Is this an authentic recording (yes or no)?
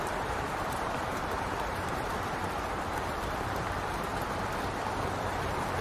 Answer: no